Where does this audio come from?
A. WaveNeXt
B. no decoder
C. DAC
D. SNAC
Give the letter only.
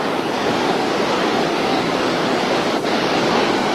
C